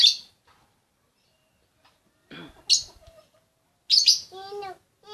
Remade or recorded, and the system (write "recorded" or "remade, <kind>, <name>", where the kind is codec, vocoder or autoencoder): recorded